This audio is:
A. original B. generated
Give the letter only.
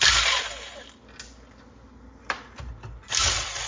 A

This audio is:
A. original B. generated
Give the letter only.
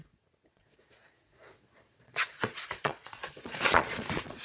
B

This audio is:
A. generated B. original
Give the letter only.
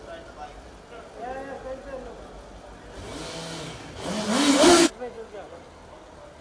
B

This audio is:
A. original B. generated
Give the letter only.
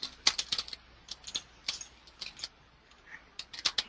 A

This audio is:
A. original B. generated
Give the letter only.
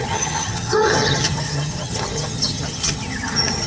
B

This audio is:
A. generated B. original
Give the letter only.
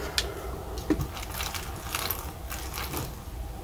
B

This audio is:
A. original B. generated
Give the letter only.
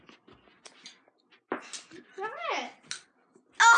A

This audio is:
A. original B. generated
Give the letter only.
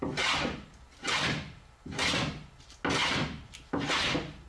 A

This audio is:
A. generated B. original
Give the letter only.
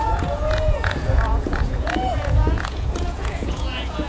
A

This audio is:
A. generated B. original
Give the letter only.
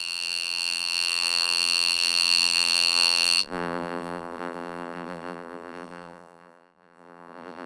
A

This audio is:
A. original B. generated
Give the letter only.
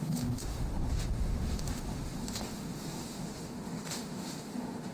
B